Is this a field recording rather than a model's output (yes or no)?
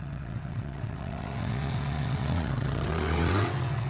no